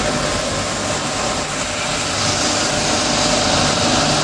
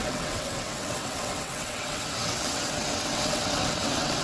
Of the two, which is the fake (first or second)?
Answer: second